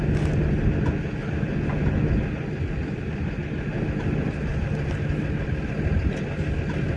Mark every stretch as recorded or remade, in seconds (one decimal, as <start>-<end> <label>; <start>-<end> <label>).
0.0-7.0 recorded